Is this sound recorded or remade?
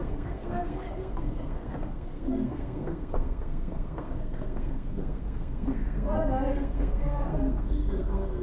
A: remade